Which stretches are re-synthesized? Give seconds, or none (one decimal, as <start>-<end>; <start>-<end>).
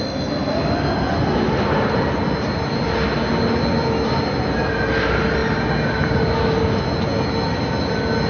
none